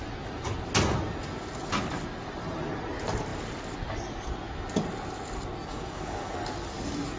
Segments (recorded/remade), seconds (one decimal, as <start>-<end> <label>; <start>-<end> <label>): 0.0-5.7 recorded; 5.7-6.3 remade; 6.3-7.2 recorded